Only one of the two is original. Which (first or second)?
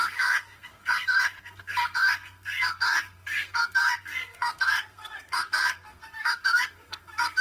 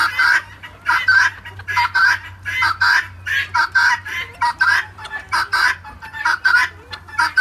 second